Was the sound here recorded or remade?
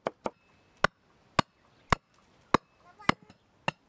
recorded